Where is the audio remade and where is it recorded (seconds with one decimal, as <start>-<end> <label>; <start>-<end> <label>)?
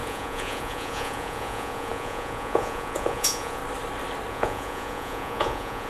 0.0-3.6 remade; 3.6-4.3 recorded; 4.3-5.9 remade